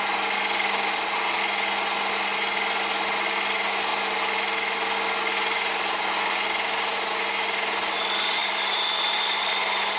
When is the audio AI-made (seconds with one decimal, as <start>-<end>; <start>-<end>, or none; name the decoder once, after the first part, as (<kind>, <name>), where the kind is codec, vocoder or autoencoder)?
none